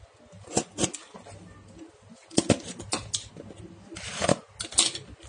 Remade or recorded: recorded